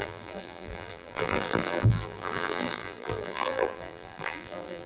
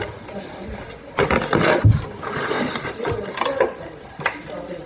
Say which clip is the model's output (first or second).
first